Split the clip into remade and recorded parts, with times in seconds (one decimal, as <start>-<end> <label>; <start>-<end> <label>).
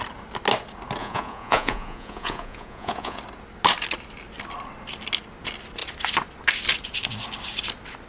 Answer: 0.0-1.0 recorded; 1.0-3.2 remade; 3.2-8.1 recorded